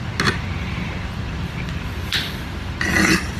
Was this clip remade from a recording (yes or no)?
no